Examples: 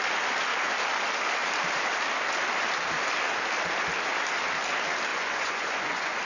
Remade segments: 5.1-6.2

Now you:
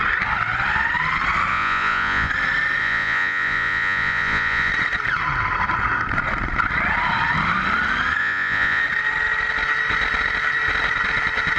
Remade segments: 1.5-2.3; 2.8-4.7; 8.2-8.8

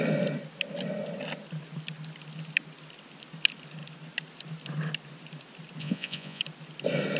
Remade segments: 5.8-6.4